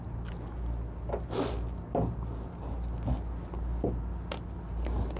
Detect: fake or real real